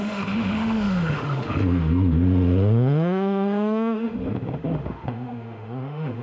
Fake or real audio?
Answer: fake